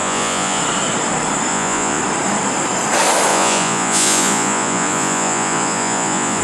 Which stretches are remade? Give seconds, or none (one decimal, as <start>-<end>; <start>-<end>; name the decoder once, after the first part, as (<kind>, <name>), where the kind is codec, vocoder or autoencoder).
0.0-0.6 (vocoder, Vocos); 1.5-2.0; 3.3-6.4